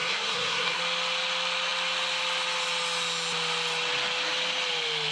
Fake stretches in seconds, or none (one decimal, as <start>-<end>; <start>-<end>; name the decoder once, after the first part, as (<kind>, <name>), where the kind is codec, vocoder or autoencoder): 0.0-0.8 (codec, SNAC)

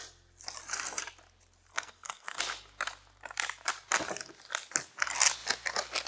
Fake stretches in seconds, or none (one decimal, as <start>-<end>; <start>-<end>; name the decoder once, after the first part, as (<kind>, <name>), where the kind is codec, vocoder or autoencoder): 1.7-2.4 (codec, SNAC)

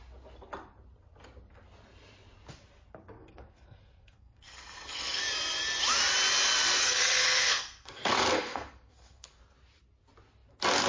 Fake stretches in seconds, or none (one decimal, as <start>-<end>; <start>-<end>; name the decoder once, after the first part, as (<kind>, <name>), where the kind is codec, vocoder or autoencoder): 3.2-5.2 (codec, SNAC); 6.8-9.4

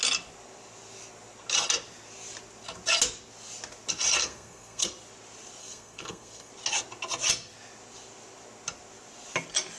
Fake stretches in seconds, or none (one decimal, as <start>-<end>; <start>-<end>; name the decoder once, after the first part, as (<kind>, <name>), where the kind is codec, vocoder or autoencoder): 4.2-4.9 (codec, SNAC); 5.6-6.5

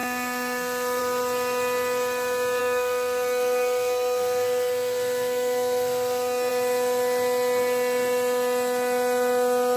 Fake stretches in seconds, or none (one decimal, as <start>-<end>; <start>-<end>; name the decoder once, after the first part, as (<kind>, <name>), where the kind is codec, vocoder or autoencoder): 0.0-1.0 (codec, SNAC); 2.6-6.5

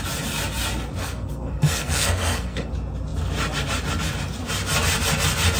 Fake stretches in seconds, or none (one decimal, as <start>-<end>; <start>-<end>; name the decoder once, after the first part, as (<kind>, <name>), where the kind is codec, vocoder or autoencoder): 1.0-2.7 (codec, SNAC)

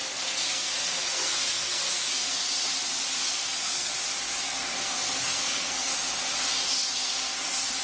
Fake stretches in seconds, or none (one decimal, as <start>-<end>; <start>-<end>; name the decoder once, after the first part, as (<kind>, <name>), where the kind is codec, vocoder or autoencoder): 0.0-2.4 (codec, SNAC); 3.3-3.9; 4.4-5.9; 6.9-7.8

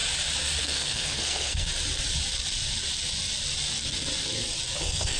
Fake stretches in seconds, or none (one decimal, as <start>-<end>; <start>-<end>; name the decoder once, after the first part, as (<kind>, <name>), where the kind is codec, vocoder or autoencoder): 0.6-1.7 (codec, SNAC); 4.8-5.2